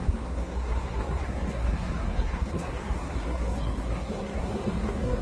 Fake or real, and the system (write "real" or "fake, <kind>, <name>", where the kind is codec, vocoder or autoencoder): fake, codec, SNAC